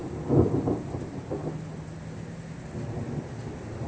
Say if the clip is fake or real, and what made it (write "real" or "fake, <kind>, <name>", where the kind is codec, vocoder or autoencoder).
real